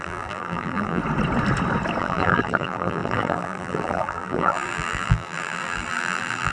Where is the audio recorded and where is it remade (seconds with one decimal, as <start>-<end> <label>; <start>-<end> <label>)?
0.0-1.0 remade; 1.0-2.0 recorded; 2.0-6.5 remade